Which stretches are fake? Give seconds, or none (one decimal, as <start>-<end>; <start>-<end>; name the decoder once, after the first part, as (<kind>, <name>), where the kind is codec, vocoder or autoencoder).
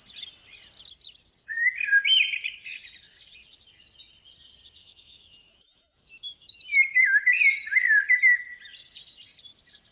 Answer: 4.8-7.4 (autoencoder, DAC-VAE)